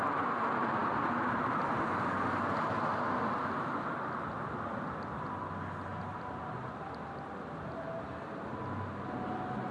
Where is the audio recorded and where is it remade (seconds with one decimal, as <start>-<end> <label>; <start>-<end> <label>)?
0.0-9.7 recorded